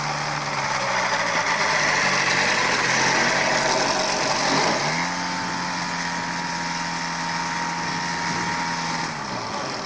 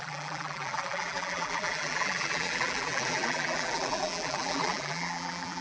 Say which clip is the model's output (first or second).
second